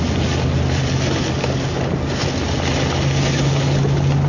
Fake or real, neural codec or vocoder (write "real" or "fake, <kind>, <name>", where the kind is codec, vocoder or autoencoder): real